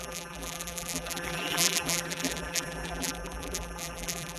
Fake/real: fake